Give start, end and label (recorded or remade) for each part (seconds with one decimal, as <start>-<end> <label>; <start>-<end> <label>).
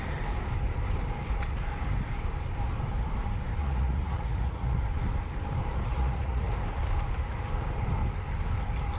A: 0.0-3.6 recorded; 3.6-4.8 remade; 4.8-6.0 recorded; 6.0-6.5 remade; 6.5-9.0 recorded